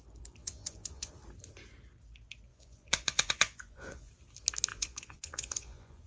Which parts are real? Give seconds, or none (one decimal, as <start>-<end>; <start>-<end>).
0.0-0.4; 1.1-2.5; 4.1-4.7